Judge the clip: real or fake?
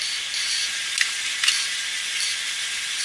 real